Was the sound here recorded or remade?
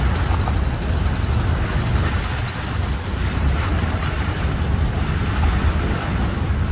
recorded